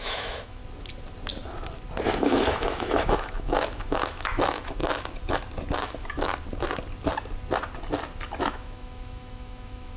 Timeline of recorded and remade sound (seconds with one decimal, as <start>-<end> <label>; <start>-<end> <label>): 0.0-0.6 remade; 0.6-2.2 recorded; 2.2-4.8 remade; 4.8-5.8 recorded; 5.8-6.3 remade; 6.3-8.4 recorded; 8.4-10.0 remade